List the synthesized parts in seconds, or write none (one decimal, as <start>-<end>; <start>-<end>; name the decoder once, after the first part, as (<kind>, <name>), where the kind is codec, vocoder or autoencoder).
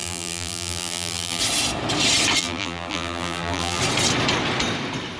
0.0-1.4 (vocoder, BigVGAN v2); 2.4-3.8